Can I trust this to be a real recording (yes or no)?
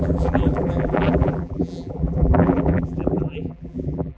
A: no